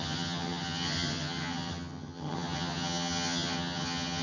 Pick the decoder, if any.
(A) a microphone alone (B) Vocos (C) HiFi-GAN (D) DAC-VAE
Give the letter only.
C